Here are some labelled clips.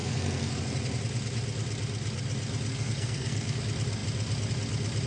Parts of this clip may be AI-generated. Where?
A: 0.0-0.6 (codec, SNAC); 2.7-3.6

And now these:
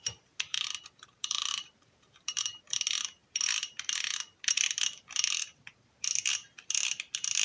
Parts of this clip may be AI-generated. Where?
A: 0.5-2.8 (vocoder, BigVGAN v2)

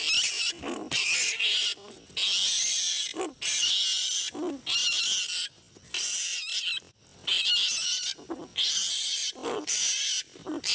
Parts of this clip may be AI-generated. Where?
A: 8.5-9.9 (vocoder, BigVGAN v2)

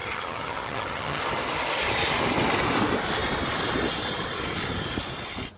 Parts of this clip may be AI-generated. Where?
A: 0.0-1.2 (vocoder, HiFi-GAN)

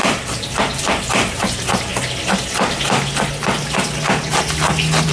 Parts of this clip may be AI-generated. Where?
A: none

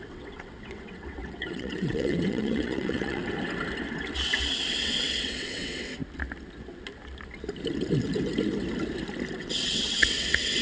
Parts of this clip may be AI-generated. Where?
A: 0.0-3.2 (vocoder, WaveNeXt); 4.8-6.0; 9.4-10.6